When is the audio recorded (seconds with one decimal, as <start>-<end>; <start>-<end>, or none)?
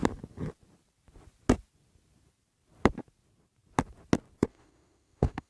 0.0-4.5